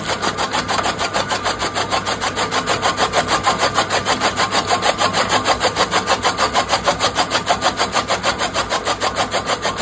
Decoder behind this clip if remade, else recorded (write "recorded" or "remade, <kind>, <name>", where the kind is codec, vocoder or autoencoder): recorded